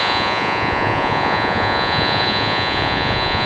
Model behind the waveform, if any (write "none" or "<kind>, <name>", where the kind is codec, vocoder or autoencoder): vocoder, Vocos